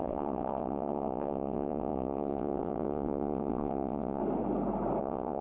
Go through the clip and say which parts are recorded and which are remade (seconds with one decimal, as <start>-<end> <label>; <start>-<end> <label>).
0.0-4.2 remade; 4.2-5.0 recorded; 5.0-5.4 remade